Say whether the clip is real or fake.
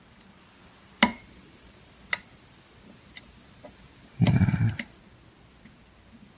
fake